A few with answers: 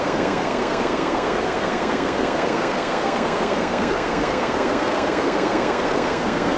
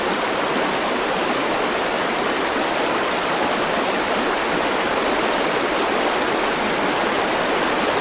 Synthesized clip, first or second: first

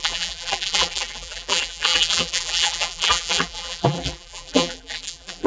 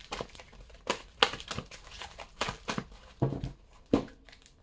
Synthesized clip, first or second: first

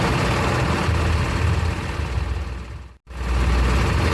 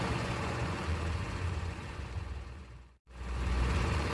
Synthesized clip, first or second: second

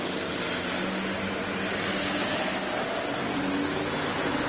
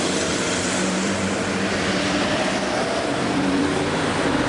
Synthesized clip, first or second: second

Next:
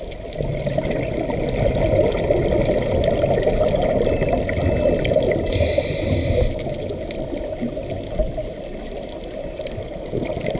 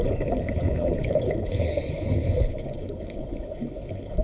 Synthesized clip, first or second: second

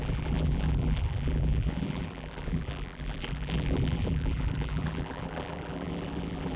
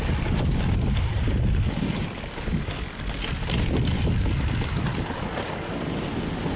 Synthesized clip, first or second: first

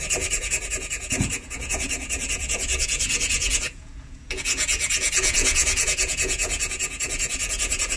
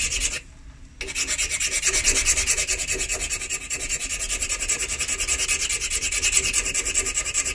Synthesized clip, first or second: first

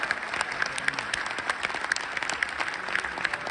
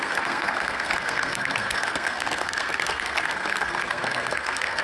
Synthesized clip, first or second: second